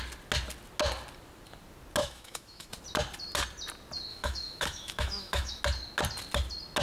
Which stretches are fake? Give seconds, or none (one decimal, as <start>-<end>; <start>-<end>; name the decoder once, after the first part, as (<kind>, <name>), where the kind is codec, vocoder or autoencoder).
2.0-2.7 (autoencoder, DAC-VAE); 4.1-5.6